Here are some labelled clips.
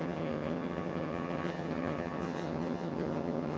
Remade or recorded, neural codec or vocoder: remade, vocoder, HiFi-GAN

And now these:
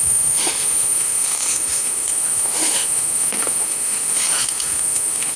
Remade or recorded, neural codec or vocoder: remade, autoencoder, DAC-VAE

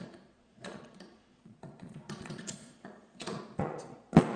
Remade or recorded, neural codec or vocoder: remade, vocoder, Vocos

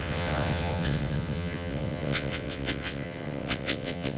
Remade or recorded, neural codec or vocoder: remade, vocoder, WaveNeXt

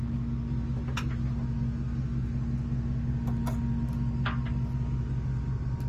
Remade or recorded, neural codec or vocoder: recorded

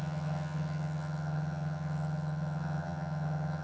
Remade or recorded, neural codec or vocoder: remade, vocoder, HiFi-GAN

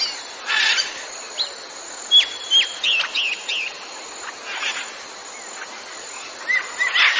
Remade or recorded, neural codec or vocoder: recorded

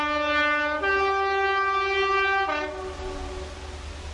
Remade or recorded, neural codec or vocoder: recorded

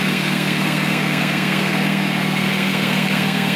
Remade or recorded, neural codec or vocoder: remade, codec, SNAC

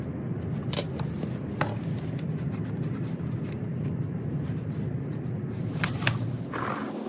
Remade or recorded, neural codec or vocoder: recorded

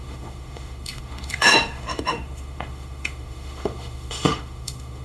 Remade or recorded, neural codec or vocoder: remade, autoencoder, DAC-VAE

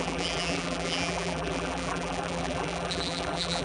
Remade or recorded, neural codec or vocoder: remade, vocoder, BigVGAN v2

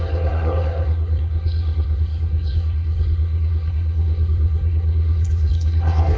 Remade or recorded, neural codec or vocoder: remade, codec, SNAC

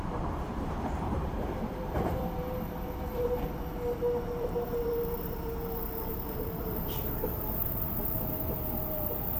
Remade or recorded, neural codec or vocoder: remade, vocoder, BigVGAN v2